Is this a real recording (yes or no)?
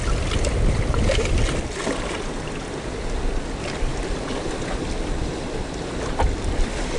yes